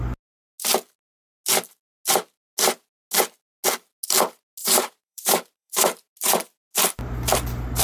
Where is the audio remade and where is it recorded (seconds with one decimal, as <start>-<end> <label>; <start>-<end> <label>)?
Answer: 0.0-4.6 recorded; 4.6-6.1 remade; 6.1-7.8 recorded